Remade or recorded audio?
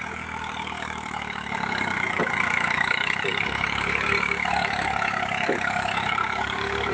remade